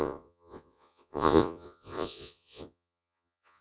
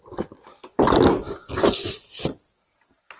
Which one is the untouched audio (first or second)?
second